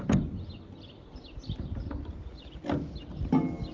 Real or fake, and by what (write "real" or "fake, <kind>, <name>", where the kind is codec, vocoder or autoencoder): real